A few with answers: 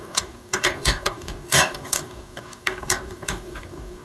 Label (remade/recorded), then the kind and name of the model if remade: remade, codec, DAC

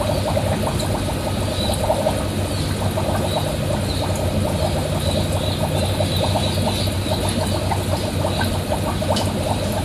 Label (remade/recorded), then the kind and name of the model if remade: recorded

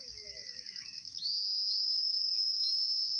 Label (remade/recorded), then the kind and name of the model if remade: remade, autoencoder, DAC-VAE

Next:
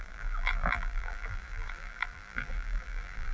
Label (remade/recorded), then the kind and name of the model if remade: remade, vocoder, BigVGAN v2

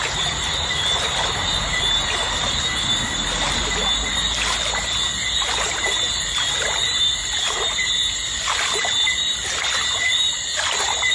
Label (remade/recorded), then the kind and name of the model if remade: recorded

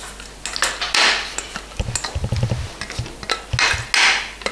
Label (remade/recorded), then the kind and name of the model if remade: recorded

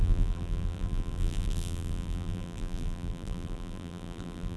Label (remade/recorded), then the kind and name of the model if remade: remade, vocoder, BigVGAN v2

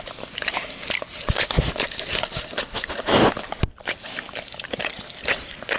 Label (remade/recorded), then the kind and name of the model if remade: recorded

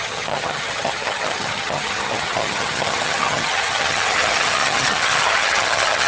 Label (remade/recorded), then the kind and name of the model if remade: remade, vocoder, HiFi-GAN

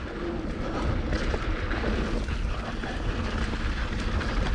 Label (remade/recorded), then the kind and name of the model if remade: recorded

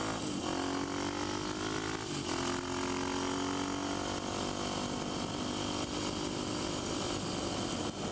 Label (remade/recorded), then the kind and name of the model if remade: recorded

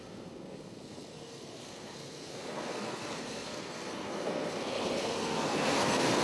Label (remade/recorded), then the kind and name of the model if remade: remade, codec, SNAC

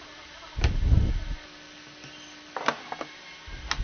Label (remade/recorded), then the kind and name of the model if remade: recorded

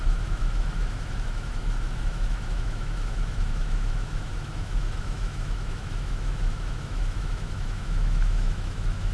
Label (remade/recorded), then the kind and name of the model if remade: remade, autoencoder, DAC-VAE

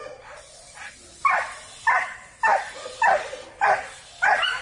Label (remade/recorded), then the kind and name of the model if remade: recorded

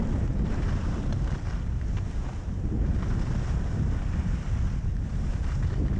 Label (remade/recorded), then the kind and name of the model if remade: recorded